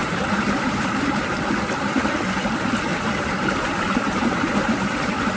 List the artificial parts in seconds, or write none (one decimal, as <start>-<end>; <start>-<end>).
0.0-1.2; 2.9-4.9